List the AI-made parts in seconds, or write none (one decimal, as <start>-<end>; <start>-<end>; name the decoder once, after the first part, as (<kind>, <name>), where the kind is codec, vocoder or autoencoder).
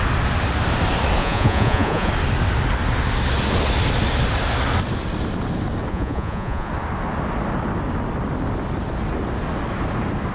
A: 1.2-2.1 (vocoder, Vocos); 5.9-6.7